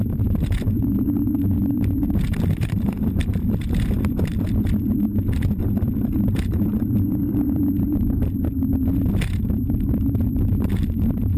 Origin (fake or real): fake